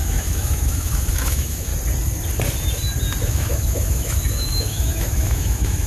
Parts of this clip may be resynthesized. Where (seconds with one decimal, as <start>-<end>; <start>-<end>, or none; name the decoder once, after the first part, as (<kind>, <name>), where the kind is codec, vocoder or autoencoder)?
0.0-1.7 (autoencoder, DAC-VAE); 3.2-5.9